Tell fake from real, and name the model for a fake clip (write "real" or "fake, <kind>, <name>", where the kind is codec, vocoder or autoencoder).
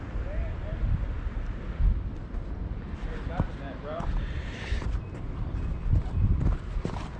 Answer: real